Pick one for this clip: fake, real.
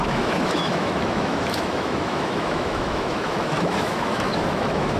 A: fake